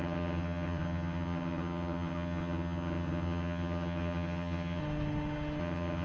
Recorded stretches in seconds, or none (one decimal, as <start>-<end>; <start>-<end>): 4.8-5.6